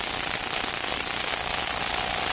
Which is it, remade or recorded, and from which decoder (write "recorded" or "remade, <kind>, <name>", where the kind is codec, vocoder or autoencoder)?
recorded